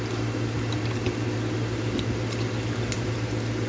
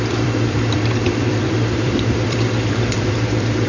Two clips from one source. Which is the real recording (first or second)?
first